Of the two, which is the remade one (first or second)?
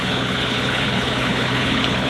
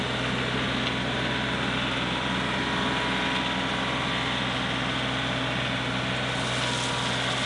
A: first